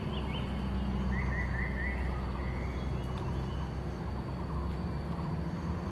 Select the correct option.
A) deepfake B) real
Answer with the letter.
B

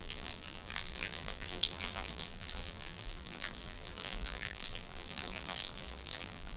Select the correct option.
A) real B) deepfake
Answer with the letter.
B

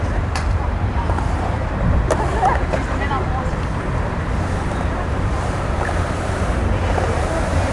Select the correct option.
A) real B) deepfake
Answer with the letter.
B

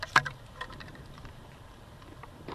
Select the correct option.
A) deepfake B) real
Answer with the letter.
A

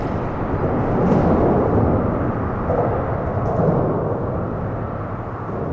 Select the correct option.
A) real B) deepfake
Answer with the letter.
A